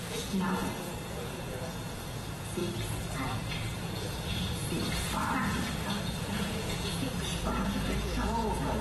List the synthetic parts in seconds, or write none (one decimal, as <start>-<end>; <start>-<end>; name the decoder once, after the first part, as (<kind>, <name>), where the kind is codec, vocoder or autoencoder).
0.0-2.6 (vocoder, Vocos); 3.8-4.6; 6.0-8.8